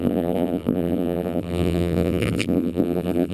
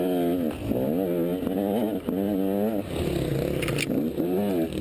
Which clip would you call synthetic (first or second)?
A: first